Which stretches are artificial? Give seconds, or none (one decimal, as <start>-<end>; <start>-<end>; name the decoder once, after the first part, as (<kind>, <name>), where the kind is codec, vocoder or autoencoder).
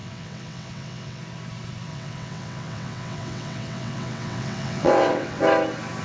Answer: 0.0-1.2 (vocoder, WaveNeXt); 1.9-5.4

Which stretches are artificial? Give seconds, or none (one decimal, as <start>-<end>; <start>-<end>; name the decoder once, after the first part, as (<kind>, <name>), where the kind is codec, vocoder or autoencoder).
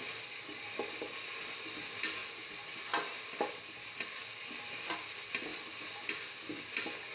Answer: none